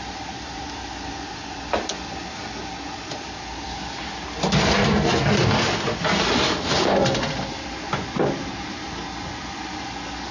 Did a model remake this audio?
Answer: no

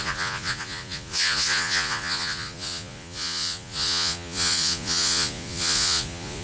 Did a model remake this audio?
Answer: yes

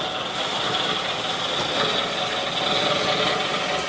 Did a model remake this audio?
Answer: no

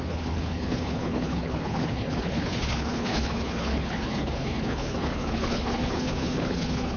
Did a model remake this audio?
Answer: yes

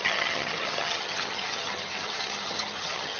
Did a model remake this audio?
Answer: yes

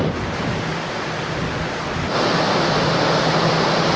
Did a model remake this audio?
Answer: no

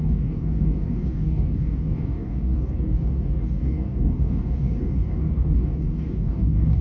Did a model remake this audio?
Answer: yes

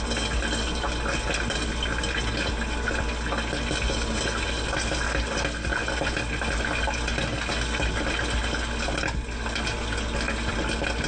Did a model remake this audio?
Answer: no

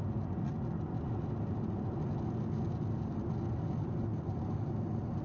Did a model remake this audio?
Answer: no